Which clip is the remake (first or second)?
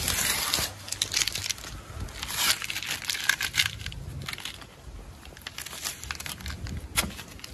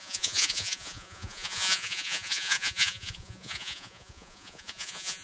second